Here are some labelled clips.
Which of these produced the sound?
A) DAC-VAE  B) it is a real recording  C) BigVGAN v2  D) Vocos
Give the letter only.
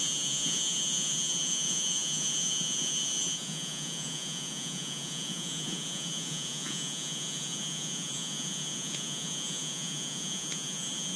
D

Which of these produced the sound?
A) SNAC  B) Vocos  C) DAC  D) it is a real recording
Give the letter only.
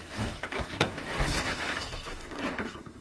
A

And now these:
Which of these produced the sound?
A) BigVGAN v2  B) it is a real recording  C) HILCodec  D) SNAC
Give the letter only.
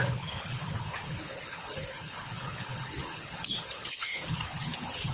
C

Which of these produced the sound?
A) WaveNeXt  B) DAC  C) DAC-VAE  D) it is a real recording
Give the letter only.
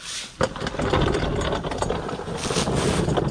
D